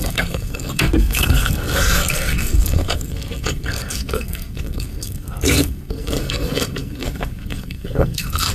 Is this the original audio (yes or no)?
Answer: no